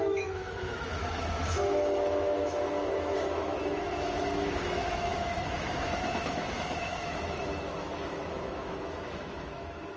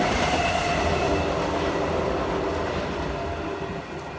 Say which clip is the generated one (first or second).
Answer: first